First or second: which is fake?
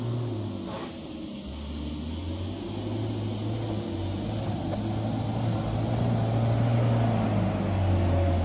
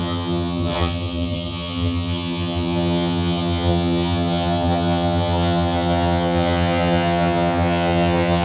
second